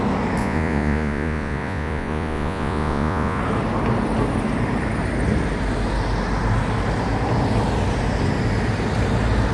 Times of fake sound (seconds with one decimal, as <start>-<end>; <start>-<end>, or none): 0.4-3.4